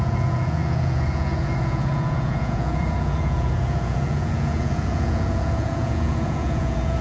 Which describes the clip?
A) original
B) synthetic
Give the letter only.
B